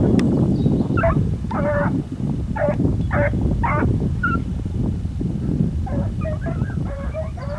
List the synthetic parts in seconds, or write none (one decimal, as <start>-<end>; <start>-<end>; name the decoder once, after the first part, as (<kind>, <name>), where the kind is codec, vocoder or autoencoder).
none